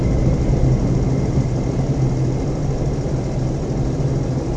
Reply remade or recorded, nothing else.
recorded